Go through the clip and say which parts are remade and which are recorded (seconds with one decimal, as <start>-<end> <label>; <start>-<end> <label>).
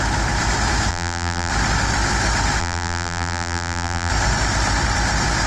0.0-0.9 recorded; 0.9-1.5 remade; 1.5-2.6 recorded; 2.6-4.1 remade; 4.1-5.5 recorded